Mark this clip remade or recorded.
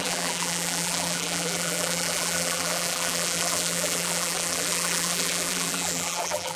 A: remade